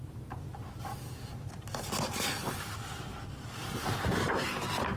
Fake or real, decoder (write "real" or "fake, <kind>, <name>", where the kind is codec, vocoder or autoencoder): real